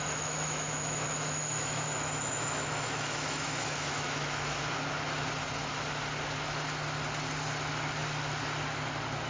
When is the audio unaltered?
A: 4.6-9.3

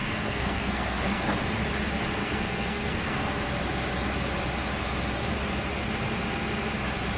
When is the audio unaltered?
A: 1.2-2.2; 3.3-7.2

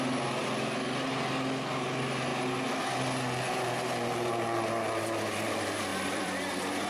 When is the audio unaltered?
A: 0.0-5.9

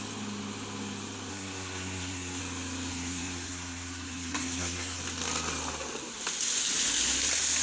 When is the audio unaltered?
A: 0.0-1.3; 2.4-2.9; 5.0-7.6

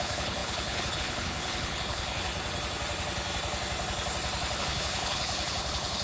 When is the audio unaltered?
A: 2.3-4.6

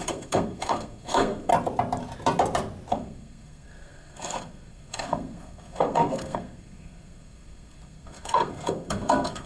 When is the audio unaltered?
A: 1.5-2.9